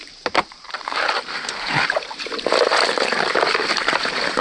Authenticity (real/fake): fake